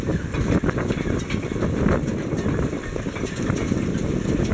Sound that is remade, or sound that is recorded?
recorded